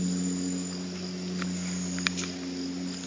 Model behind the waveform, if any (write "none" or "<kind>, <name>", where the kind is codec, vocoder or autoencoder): none